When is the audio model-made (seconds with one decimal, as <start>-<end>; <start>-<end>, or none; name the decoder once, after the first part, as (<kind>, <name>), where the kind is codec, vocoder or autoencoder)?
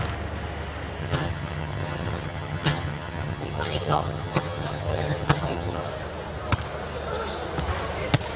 1.0-5.9 (vocoder, HiFi-GAN)